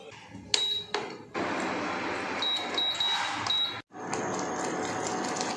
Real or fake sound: real